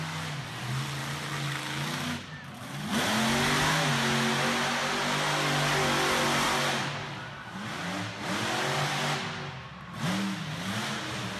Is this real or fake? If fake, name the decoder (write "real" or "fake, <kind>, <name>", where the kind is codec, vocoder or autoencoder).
real